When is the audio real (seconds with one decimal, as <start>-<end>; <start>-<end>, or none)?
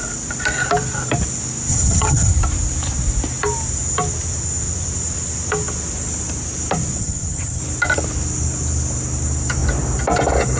0.0-1.7; 2.3-7.0; 7.6-10.6